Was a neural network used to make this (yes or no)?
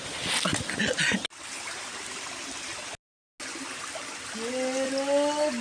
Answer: no